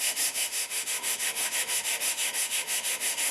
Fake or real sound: fake